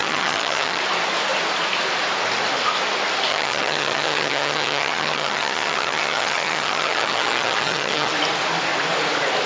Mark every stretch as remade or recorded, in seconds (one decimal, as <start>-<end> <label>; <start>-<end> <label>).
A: 0.0-0.8 remade; 0.8-3.3 recorded; 3.3-8.1 remade; 8.1-9.5 recorded